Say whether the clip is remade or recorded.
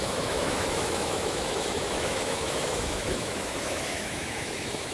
remade